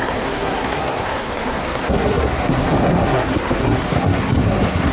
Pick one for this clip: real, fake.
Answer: fake